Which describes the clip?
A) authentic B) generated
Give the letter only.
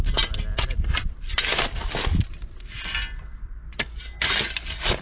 A